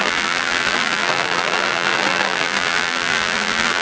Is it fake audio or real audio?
fake